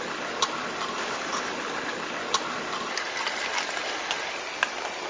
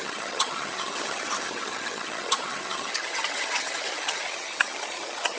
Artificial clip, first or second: second